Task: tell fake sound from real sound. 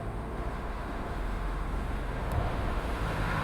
fake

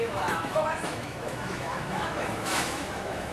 fake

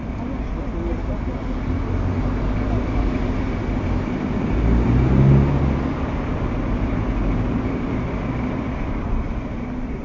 real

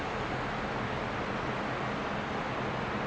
real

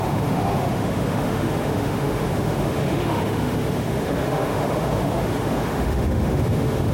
fake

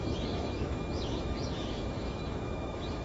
fake